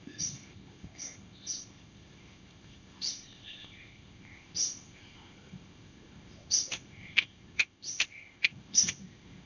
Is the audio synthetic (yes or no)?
yes